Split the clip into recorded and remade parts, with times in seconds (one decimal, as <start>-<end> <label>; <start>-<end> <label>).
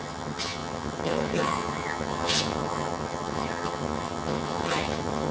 0.0-5.3 remade